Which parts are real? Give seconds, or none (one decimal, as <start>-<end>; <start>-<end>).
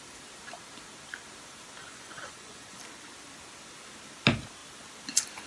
0.0-1.8; 2.8-5.5